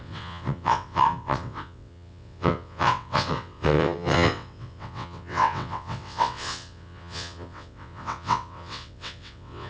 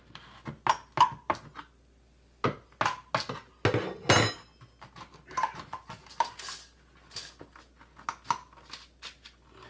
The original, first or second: second